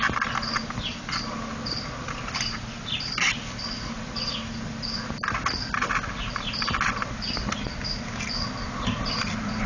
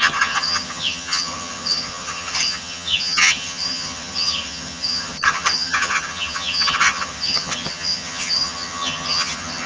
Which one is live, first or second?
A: first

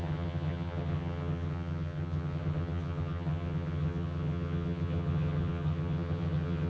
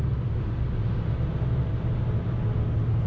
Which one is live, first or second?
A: second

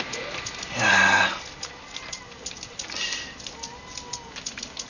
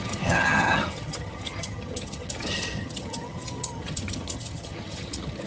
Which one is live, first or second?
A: first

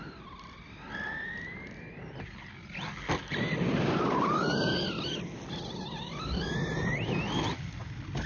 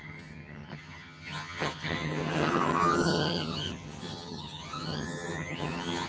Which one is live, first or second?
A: first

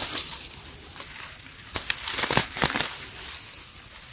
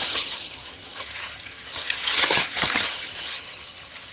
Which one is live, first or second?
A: first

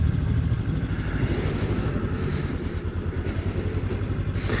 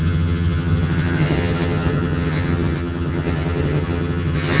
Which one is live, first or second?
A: first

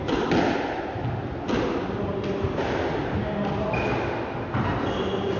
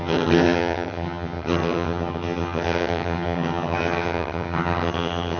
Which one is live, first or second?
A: first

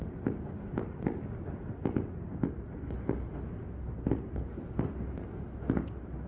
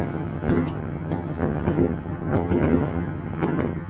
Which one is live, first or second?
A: first